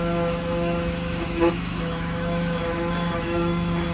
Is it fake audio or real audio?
fake